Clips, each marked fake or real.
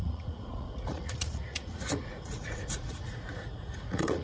fake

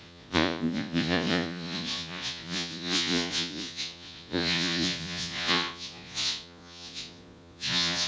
fake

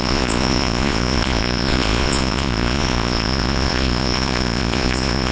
fake